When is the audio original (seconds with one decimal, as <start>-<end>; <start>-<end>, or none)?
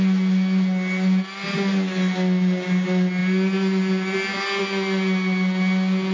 0.0-6.1